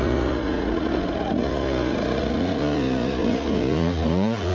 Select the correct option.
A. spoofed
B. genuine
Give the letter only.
A